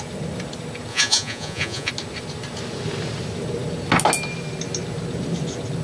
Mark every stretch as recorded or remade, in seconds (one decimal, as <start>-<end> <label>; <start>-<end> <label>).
0.0-0.9 recorded; 0.9-1.9 remade; 1.9-5.8 recorded